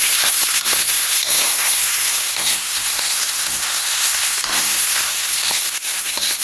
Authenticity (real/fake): fake